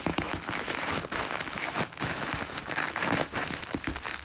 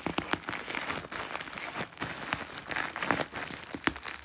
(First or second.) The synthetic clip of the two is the first